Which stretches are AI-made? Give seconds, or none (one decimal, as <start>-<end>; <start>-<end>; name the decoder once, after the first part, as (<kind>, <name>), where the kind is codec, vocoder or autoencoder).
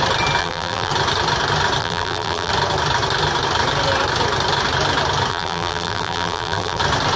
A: 0.4-0.9 (vocoder, BigVGAN v2); 1.8-2.5; 5.3-6.8